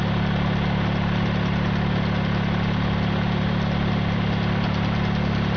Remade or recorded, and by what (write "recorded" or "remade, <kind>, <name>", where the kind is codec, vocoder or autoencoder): recorded